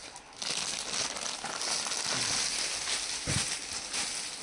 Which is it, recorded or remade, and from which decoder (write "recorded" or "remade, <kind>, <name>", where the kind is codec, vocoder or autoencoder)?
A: recorded